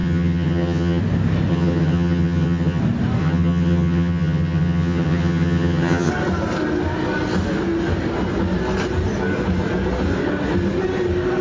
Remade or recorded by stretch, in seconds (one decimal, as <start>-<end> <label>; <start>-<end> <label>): 0.0-1.0 remade; 1.0-1.5 recorded; 1.5-2.8 remade; 2.8-3.2 recorded; 3.2-6.1 remade; 6.1-11.4 recorded